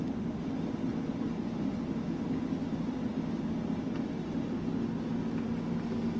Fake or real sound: real